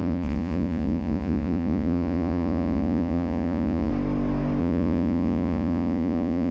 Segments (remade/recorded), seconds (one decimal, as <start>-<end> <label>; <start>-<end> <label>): 0.0-3.9 remade; 3.9-4.6 recorded; 4.6-6.5 remade